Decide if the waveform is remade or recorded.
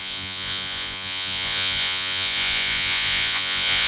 remade